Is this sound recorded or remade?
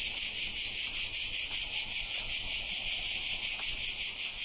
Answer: recorded